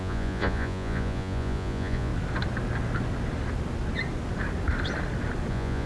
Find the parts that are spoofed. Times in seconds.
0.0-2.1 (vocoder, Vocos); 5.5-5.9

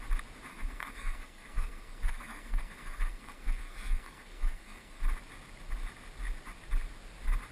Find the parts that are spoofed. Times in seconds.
0.5-5.0 (codec, SNAC)

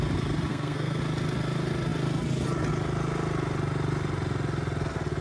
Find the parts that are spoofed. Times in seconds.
0.5-1.0 (codec, SNAC)

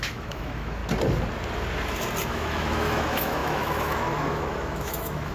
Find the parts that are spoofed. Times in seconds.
0.0-0.8 (autoencoder, DAC-VAE); 2.3-5.3

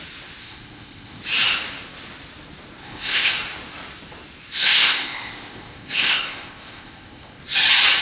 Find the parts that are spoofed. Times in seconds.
0.4-1.2 (codec, ZipCodec); 2.8-3.3; 4.6-7.4

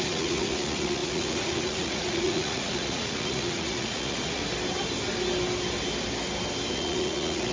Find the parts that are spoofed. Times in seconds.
0.0-4.4 (vocoder, Vocos); 6.7-7.5